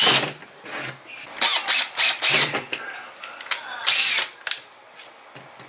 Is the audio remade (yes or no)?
no